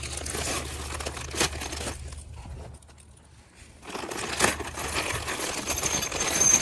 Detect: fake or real real